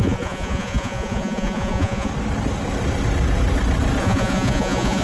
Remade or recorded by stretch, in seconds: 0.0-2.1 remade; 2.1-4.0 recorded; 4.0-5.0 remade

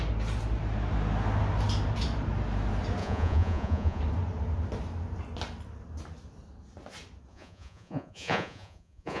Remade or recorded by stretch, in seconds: 0.0-3.0 recorded; 3.0-4.0 remade; 4.0-7.3 recorded; 7.3-9.2 remade